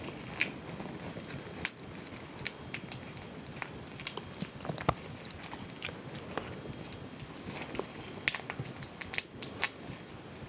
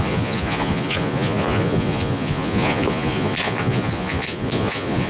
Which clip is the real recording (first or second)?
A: first